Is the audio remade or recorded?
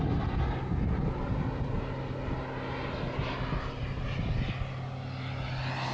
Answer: recorded